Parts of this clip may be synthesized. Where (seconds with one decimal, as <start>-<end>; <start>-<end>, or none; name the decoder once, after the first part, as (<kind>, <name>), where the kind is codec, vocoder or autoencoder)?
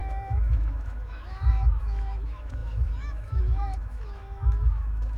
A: 0.0-5.2 (autoencoder, DAC-VAE)